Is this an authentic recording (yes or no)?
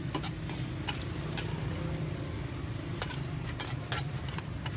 yes